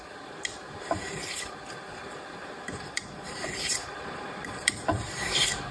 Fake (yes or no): yes